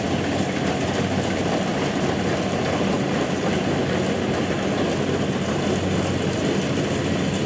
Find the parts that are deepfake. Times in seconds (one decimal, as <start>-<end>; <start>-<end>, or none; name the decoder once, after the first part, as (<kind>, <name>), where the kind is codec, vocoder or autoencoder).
1.7-2.6 (vocoder, BigVGAN v2)